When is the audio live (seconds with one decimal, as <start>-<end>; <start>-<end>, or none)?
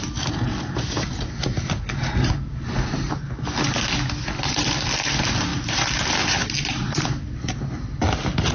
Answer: 0.0-8.5